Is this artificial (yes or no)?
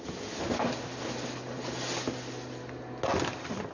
no